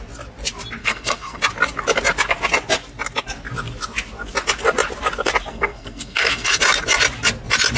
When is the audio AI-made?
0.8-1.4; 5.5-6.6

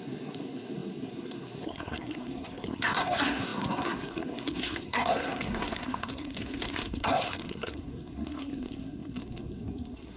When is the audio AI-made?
0.0-10.2

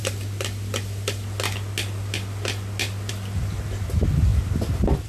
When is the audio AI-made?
none